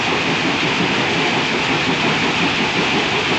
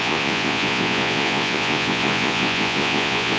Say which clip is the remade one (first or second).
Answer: second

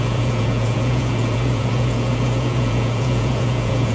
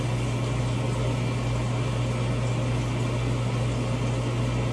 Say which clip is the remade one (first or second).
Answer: first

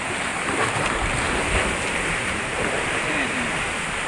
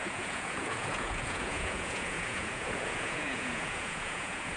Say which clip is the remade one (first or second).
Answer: second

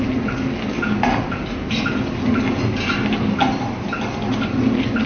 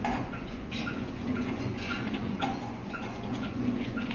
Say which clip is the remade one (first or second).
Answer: second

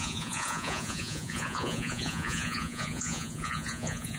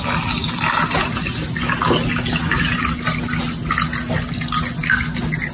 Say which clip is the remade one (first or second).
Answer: first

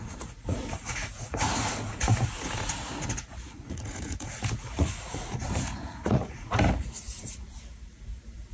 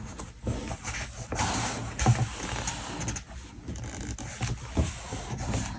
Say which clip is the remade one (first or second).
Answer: first